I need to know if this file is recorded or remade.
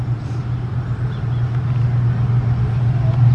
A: recorded